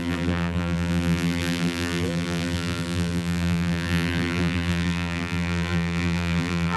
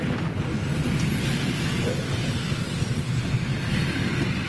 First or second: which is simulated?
first